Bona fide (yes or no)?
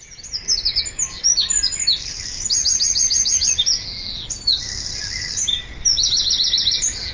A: yes